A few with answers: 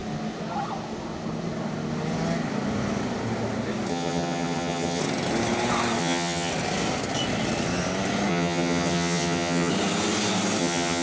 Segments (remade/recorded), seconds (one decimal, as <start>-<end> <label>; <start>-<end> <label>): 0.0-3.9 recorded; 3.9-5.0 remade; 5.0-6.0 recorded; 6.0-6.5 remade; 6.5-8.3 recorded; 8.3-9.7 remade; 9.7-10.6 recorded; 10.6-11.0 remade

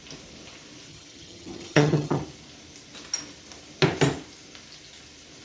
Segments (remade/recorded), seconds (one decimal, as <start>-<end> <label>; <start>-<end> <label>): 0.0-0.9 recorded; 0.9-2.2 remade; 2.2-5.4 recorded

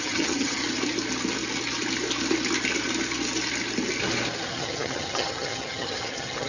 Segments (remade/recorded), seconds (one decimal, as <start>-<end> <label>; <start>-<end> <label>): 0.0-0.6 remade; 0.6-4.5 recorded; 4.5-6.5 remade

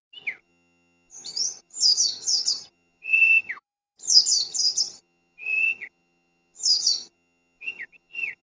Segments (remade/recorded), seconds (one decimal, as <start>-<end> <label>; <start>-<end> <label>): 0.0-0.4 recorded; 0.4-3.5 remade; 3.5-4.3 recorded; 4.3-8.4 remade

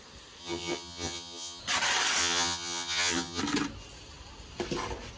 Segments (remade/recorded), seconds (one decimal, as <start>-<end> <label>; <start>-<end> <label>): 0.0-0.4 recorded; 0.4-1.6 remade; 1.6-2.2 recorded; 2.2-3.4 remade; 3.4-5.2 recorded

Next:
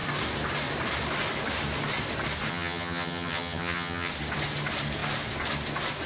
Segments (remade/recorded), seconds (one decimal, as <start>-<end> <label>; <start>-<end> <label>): 0.0-2.5 recorded; 2.5-4.1 remade; 4.1-6.1 recorded

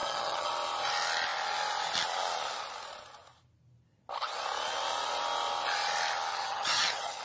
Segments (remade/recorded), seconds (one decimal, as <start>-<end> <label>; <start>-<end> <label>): 0.0-0.5 remade; 0.5-6.3 recorded; 6.3-7.2 remade

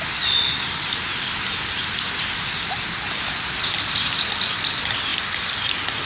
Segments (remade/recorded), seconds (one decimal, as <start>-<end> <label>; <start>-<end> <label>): 0.0-6.1 recorded